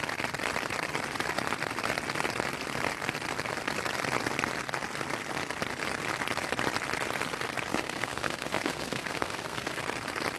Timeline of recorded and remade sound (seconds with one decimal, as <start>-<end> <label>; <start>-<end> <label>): 0.0-7.7 recorded; 7.7-9.8 remade; 9.8-10.4 recorded